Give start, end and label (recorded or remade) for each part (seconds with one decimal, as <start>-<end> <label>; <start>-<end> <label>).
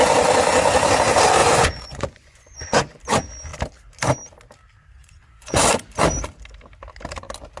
0.0-1.4 recorded; 1.4-3.0 remade; 3.0-5.0 recorded; 5.0-5.6 remade; 5.6-7.6 recorded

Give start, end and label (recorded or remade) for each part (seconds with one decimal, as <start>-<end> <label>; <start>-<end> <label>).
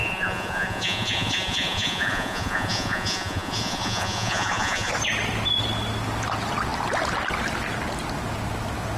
0.0-4.9 remade; 4.9-9.0 recorded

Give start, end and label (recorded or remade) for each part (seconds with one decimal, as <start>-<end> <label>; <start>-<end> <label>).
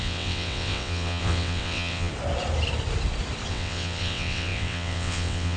0.0-2.1 remade; 2.1-3.5 recorded; 3.5-5.6 remade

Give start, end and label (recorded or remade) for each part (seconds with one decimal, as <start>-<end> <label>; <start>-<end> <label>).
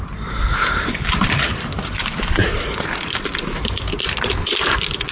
0.0-0.7 recorded; 0.7-3.8 remade; 3.8-5.1 recorded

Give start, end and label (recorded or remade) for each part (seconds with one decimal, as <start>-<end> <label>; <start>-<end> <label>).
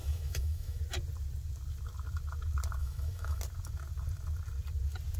0.0-0.8 remade; 0.8-2.8 recorded; 2.8-3.4 remade; 3.4-5.2 recorded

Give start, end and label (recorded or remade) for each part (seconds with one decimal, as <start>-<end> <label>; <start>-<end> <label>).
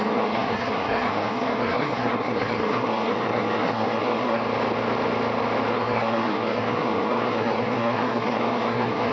0.0-4.4 remade; 4.4-5.7 recorded; 5.7-9.1 remade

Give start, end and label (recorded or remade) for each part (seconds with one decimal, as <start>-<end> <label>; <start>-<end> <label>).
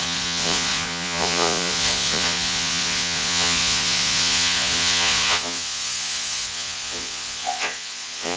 0.0-8.4 remade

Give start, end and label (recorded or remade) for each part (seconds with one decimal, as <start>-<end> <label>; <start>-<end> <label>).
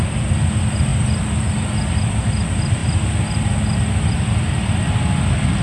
0.0-5.6 recorded